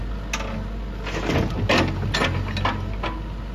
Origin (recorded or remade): recorded